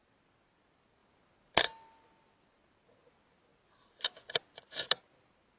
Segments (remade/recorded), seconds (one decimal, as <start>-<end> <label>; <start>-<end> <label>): 0.0-5.6 recorded